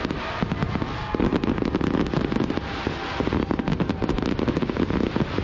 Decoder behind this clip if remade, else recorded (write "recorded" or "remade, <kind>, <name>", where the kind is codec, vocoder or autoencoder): recorded